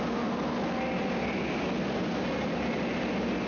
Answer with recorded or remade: recorded